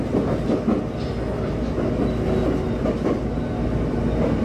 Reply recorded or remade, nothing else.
recorded